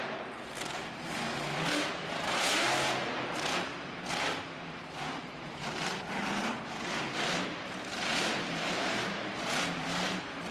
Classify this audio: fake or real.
fake